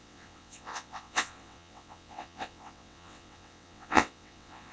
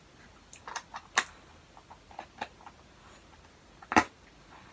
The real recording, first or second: second